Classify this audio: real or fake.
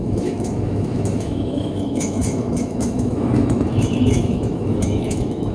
fake